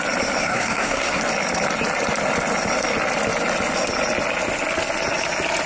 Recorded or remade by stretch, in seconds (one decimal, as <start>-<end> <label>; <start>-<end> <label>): 0.0-0.4 recorded; 0.4-1.2 remade; 1.2-5.7 recorded